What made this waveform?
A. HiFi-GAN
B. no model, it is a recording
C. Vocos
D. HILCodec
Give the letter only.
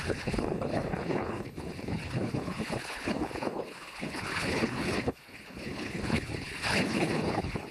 D